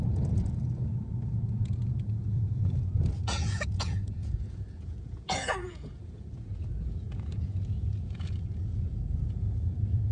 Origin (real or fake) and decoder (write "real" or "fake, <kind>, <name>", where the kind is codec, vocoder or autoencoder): fake, vocoder, Vocos